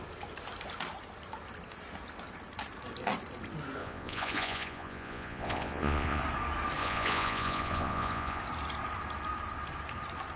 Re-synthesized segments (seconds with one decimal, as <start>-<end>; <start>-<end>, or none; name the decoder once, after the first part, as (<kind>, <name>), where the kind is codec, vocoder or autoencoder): 3.8-6.2 (vocoder, Vocos); 6.8-8.4